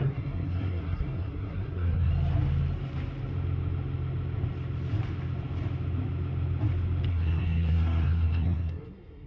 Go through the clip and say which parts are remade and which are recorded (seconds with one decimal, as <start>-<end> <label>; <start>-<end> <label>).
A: 0.0-2.1 remade; 2.1-7.1 recorded; 7.1-9.3 remade